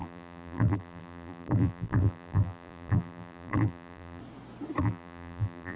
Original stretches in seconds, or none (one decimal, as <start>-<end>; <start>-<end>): 4.2-4.8